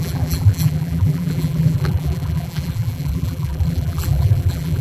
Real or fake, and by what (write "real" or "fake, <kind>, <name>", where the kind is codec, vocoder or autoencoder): fake, vocoder, BigVGAN v2